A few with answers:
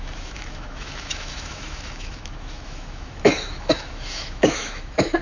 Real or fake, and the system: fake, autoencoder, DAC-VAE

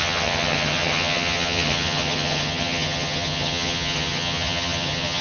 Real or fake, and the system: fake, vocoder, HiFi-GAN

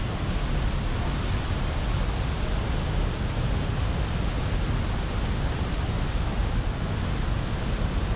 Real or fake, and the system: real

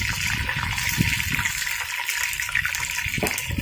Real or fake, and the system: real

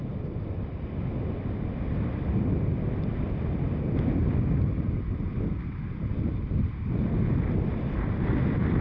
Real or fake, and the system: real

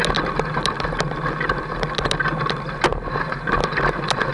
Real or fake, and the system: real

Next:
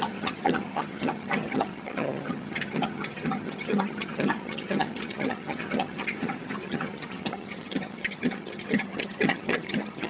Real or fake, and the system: fake, vocoder, HiFi-GAN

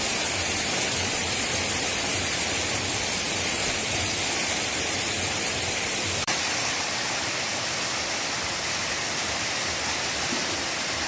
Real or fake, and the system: fake, vocoder, BigVGAN v2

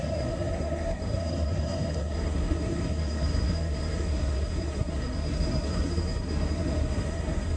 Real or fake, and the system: fake, codec, SNAC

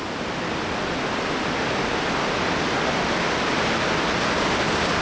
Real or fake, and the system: real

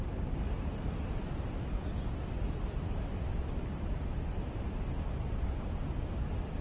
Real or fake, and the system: real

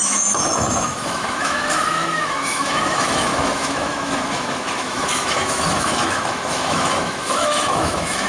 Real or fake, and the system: fake, autoencoder, DAC-VAE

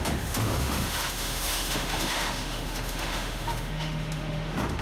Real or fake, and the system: fake, autoencoder, DAC-VAE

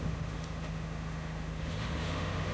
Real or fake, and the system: fake, autoencoder, DAC-VAE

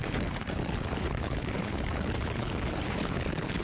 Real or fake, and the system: fake, codec, HILCodec